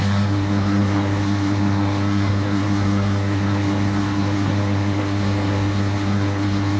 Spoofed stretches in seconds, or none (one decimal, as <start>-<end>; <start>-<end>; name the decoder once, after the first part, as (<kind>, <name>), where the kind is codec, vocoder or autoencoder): 0.0-6.8 (codec, SNAC)